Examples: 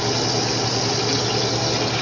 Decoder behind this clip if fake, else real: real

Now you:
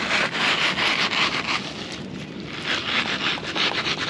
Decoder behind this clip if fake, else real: real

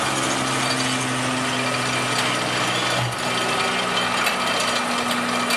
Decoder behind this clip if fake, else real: real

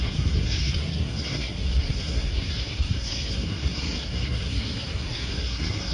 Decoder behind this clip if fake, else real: fake, codec, SNAC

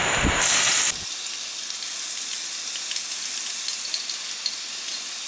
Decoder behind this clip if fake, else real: real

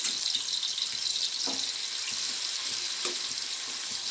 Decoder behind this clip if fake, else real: real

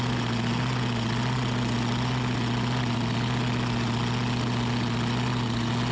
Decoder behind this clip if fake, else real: real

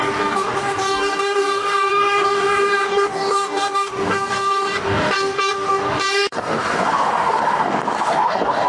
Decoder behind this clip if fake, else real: fake, codec, DAC